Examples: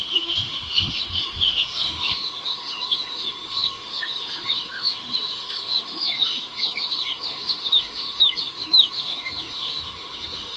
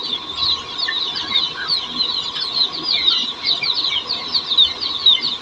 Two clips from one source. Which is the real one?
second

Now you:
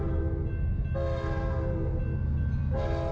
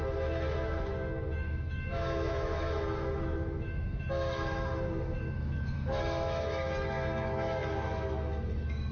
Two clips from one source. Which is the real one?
first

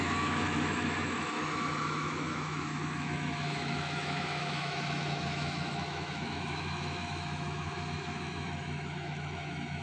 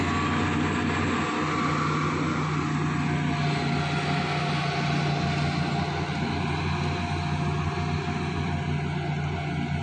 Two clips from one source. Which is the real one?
second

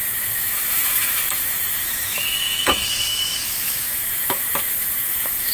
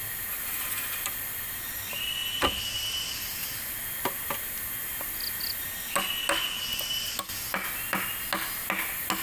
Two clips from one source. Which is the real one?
second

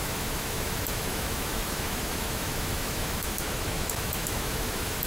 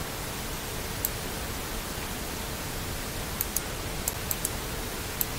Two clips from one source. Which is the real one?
second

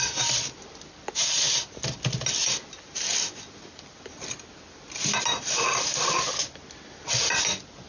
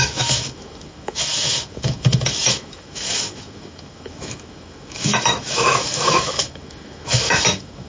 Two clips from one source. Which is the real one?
first